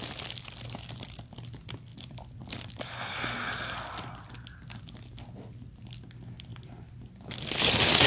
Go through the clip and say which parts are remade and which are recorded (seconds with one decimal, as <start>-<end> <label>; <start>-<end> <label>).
0.0-8.1 recorded